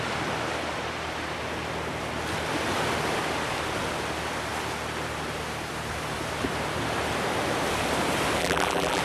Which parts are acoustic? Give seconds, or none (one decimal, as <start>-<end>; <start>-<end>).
0.0-8.4

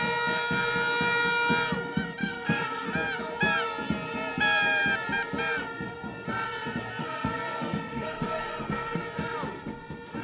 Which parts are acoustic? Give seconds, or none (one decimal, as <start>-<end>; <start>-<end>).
0.0-2.2; 2.9-7.0; 9.0-10.2

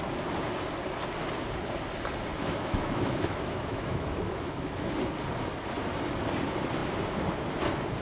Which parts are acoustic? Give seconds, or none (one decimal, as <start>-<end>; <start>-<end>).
0.0-2.3; 4.9-8.0